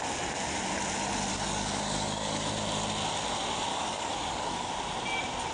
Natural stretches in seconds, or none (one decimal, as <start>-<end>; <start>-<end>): 0.0-1.3; 2.5-3.7; 4.7-5.5